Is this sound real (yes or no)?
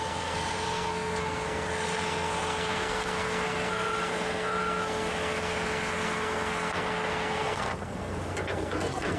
no